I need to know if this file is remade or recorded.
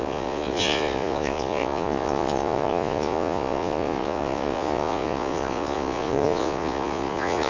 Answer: remade